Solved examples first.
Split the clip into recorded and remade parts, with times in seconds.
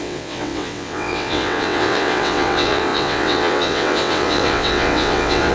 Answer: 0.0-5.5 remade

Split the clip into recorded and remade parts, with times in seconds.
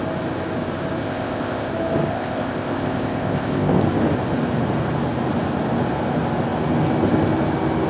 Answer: 0.0-1.0 recorded; 1.0-1.7 remade; 1.7-2.1 recorded; 2.1-3.8 remade; 3.8-7.9 recorded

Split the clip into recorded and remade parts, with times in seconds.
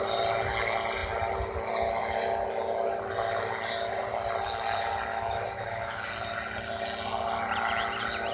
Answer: 0.0-5.1 recorded; 5.1-6.1 remade; 6.1-8.3 recorded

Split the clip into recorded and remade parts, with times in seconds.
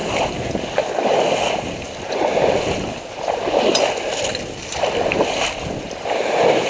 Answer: 0.0-6.7 recorded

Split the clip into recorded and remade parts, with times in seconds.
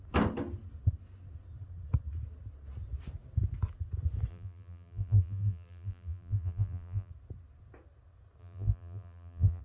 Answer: 0.0-4.3 recorded; 4.3-7.1 remade; 7.1-8.4 recorded; 8.4-9.6 remade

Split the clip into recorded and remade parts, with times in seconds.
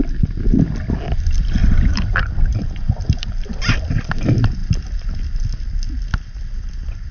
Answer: 0.0-1.6 recorded; 1.6-3.6 remade; 3.6-7.1 recorded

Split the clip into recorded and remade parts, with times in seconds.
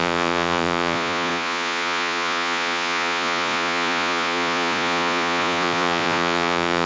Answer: 0.0-6.9 remade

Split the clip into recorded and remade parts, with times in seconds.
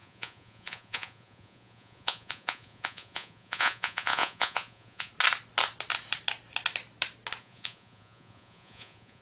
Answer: 0.0-5.1 remade; 5.1-7.4 recorded; 7.4-9.2 remade